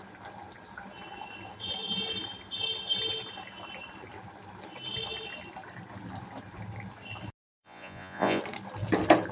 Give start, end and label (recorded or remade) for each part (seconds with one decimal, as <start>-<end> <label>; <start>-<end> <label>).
0.0-7.5 recorded; 7.5-8.4 remade; 8.4-9.3 recorded